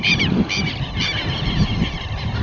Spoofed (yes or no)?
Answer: yes